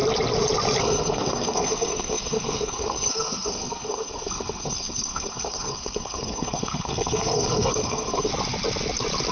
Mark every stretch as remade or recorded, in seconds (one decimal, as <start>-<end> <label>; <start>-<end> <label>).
0.0-0.8 recorded; 0.8-8.3 remade; 8.3-9.3 recorded